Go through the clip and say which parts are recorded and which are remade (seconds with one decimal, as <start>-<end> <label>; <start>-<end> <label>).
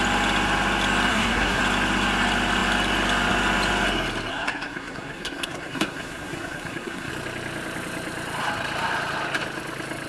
0.0-1.1 recorded; 1.1-1.6 remade; 1.6-4.3 recorded; 4.3-7.1 remade; 7.1-10.1 recorded